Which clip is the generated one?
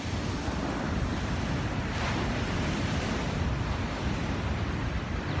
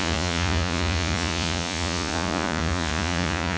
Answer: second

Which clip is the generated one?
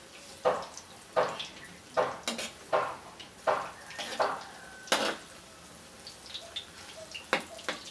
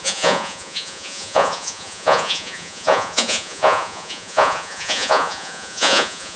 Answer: second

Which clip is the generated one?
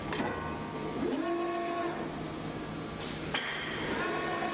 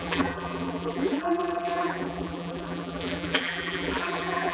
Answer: second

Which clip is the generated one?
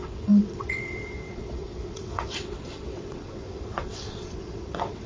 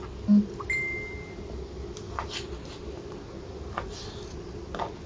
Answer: first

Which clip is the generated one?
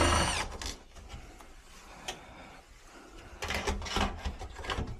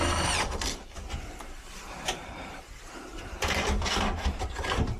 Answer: second